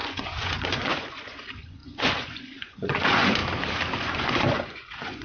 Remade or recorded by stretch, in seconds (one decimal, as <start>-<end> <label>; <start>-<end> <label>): 0.0-3.4 remade; 3.4-4.0 recorded; 4.0-5.2 remade